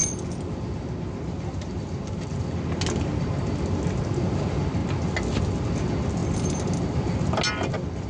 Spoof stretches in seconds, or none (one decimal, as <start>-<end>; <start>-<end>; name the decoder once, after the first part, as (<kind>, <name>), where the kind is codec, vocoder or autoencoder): none